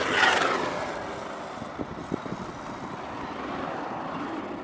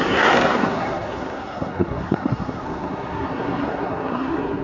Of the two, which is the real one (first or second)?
first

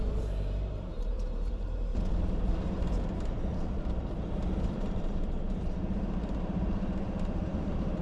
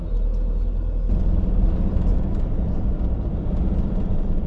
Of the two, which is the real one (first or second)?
second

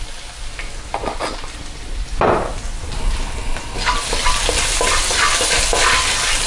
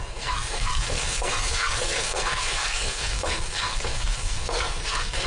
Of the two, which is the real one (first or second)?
first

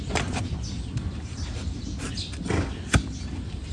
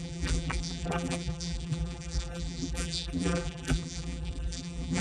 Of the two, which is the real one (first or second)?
first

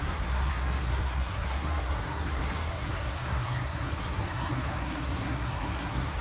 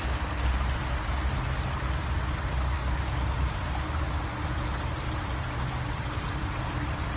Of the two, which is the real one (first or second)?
second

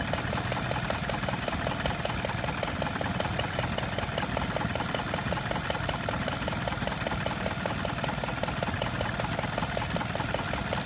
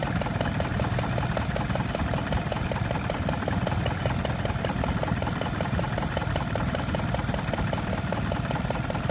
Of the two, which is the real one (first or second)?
first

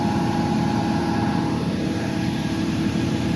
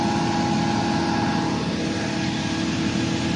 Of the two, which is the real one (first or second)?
second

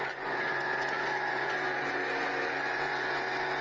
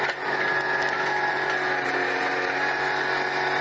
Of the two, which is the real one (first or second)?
second